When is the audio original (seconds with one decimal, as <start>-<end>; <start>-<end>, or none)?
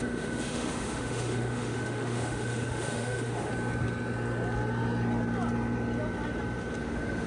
3.5-6.8